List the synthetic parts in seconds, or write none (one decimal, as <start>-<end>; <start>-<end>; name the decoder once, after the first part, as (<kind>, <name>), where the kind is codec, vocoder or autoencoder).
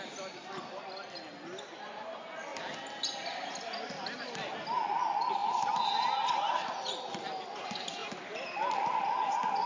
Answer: none